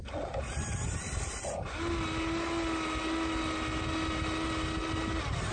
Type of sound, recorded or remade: recorded